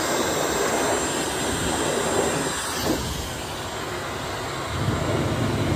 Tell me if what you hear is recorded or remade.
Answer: recorded